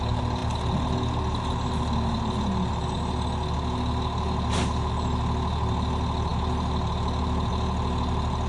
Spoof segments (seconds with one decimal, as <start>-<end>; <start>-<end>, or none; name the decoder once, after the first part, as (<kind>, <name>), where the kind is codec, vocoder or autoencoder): none